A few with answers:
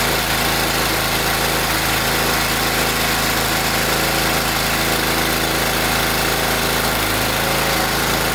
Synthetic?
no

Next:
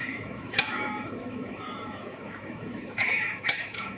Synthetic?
yes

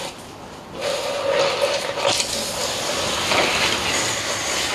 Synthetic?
no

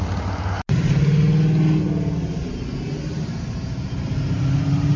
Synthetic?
no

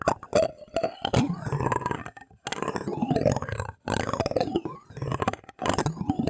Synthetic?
no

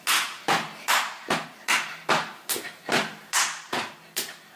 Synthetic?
no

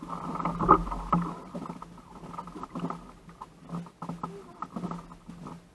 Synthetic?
no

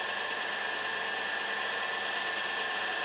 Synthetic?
no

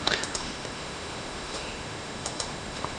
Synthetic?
yes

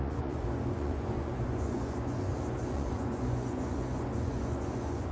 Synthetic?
yes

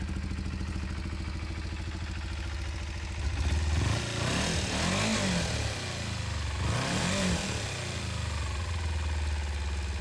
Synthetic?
no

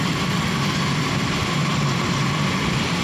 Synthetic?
yes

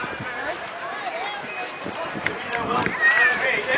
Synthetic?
yes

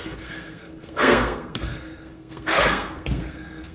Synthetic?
yes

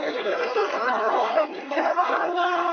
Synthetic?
yes